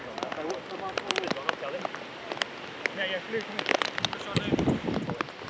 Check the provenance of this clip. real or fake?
real